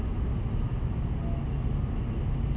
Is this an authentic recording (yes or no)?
yes